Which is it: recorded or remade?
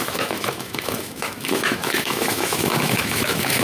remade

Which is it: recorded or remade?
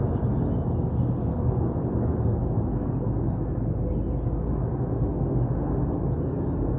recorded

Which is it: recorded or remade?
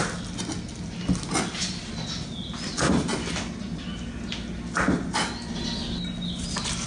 recorded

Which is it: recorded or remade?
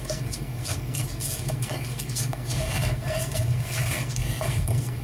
remade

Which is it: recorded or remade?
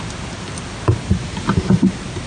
recorded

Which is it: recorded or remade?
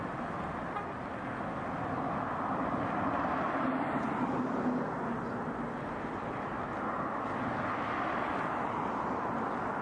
recorded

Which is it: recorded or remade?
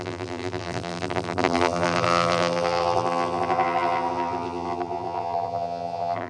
remade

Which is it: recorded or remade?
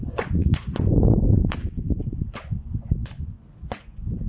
remade